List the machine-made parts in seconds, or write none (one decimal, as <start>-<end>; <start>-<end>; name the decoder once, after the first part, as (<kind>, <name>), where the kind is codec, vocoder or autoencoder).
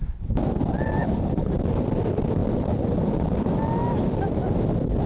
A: 1.0-1.5 (codec, HILCodec)